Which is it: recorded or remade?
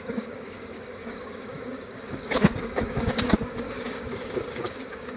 remade